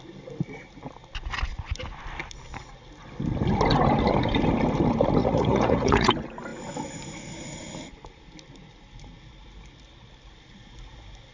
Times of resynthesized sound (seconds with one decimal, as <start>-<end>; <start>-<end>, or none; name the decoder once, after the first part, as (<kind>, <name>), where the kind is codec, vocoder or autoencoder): 5.2-6.1 (vocoder, Vocos)